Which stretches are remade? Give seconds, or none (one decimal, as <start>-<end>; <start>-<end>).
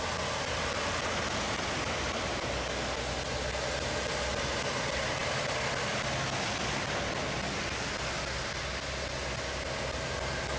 none